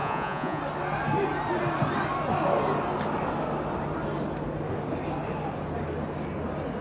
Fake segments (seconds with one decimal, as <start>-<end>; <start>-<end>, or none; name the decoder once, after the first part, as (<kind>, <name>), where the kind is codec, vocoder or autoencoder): 0.0-0.6 (vocoder, Vocos)